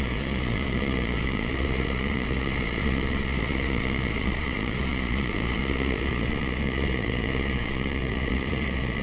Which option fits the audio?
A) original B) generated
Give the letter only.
B